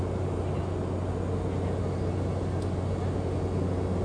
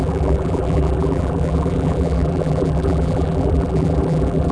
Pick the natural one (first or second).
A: first